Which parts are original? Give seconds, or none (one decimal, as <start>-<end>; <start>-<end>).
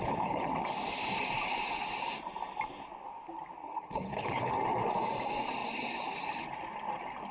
0.5-3.6; 4.5-7.3